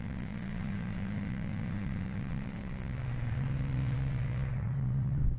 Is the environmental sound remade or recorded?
remade